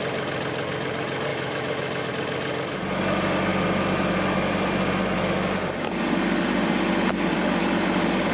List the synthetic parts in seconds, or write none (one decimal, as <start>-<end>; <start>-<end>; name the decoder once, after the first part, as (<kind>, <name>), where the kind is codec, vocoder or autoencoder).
1.3-2.1 (autoencoder, DAC-VAE)